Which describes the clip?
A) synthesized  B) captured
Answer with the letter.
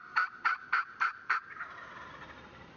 B